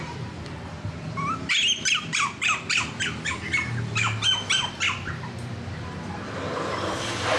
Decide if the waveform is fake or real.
real